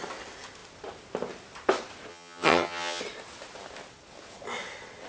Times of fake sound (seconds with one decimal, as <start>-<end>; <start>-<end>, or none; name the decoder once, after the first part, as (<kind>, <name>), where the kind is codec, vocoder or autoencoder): 2.1-3.0 (vocoder, HiFi-GAN)